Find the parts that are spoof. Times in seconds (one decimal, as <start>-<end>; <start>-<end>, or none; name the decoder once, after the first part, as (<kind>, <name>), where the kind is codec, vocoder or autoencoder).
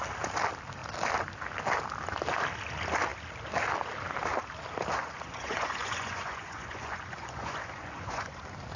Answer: 5.0-8.4 (vocoder, Vocos)